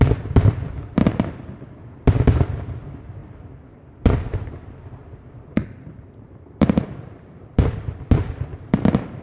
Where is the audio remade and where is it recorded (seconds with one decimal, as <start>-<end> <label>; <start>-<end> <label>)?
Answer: 0.0-9.2 remade